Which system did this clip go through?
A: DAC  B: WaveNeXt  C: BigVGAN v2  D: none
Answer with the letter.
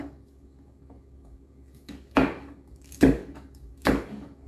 A